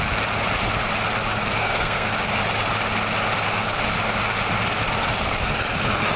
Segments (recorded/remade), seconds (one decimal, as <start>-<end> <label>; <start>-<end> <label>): 0.0-1.6 recorded; 1.6-2.1 remade; 2.1-6.2 recorded